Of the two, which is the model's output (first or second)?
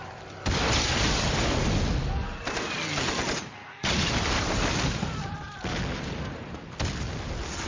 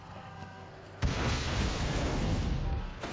second